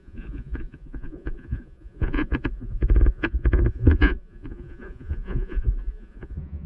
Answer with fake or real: fake